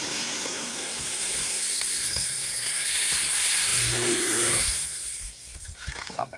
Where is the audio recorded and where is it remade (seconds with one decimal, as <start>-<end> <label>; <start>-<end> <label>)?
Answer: 0.0-6.4 remade